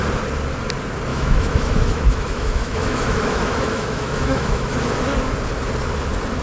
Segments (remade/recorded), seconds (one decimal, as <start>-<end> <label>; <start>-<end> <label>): 0.0-1.1 recorded; 1.1-4.9 remade; 4.9-6.4 recorded